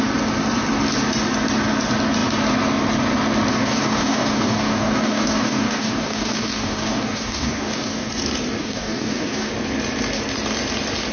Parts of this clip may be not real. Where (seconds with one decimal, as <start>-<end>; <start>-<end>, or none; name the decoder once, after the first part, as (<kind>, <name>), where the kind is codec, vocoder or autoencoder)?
3.5-8.1 (codec, DAC); 8.6-9.5